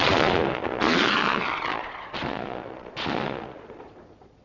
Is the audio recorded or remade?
remade